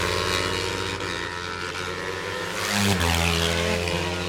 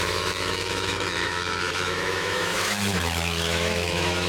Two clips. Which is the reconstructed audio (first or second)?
second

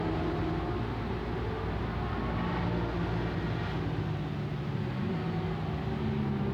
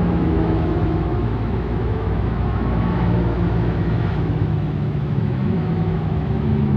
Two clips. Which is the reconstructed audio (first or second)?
second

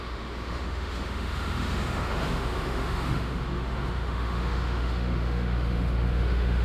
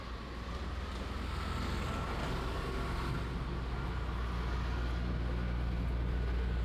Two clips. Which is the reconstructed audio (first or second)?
first